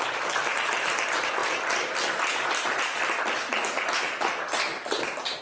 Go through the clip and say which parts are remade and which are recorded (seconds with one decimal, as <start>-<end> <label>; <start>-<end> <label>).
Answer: 0.0-5.4 recorded